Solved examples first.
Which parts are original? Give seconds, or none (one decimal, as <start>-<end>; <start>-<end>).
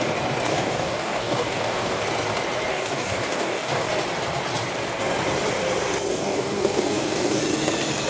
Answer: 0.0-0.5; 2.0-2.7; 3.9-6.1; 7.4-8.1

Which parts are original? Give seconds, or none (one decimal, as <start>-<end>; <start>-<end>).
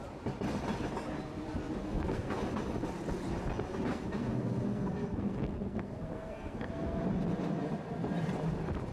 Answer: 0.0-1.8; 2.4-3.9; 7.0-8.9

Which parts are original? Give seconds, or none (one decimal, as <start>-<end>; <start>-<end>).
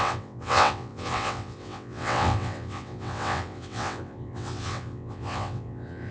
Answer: none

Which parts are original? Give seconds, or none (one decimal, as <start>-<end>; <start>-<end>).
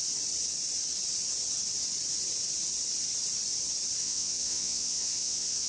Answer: 0.0-4.0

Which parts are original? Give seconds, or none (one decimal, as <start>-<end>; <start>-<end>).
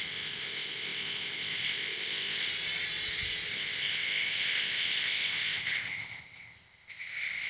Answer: 2.5-3.5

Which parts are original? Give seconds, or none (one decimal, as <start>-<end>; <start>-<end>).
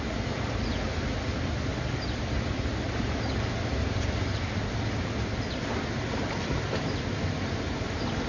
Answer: 0.0-8.3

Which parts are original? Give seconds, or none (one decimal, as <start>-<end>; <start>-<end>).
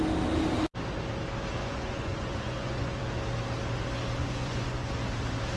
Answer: 0.0-1.6; 3.0-4.2; 4.9-5.6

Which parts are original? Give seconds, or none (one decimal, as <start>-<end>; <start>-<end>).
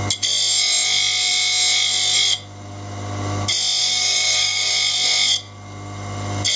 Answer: 0.0-3.8; 4.7-6.6